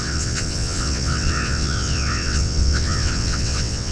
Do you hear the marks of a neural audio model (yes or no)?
yes